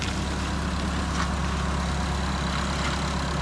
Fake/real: real